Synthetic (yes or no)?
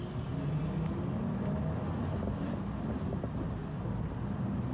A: no